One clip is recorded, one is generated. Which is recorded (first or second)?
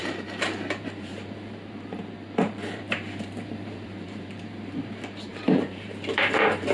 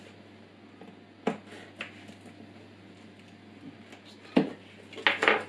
second